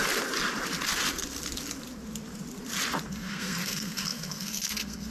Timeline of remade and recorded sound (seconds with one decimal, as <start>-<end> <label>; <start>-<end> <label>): 0.0-3.1 recorded; 3.1-5.1 remade